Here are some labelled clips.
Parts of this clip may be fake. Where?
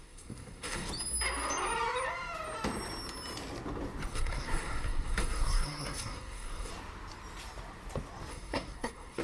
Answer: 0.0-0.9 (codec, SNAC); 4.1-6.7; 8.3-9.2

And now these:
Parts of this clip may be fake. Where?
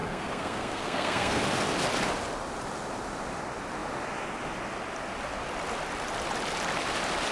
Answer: 0.0-1.4 (codec, SNAC)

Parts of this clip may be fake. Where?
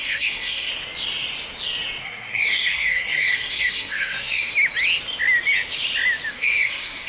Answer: 0.0-0.7 (codec, SNAC); 2.0-4.5; 6.3-7.1